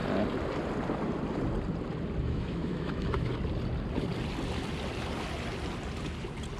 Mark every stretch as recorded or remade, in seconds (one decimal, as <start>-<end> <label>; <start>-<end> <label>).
0.0-2.2 recorded; 2.2-3.3 remade; 3.3-6.6 recorded